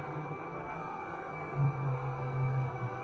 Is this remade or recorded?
remade